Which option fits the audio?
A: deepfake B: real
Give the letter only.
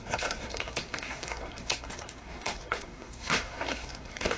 A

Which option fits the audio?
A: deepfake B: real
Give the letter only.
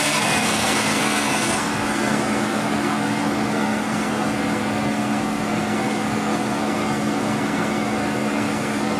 A